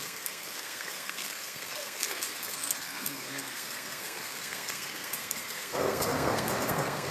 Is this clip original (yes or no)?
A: no